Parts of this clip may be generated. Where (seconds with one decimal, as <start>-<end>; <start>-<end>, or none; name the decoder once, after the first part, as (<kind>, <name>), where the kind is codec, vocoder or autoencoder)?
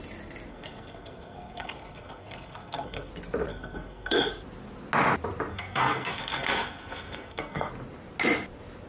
0.5-3.1 (codec, SNAC); 3.5-4.3; 5.5-7.7